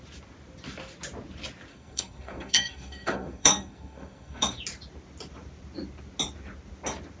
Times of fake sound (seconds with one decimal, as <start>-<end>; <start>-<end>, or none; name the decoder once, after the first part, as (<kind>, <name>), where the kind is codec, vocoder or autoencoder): 1.7-4.6 (codec, SNAC)